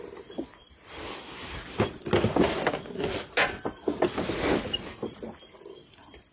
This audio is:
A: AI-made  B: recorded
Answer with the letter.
B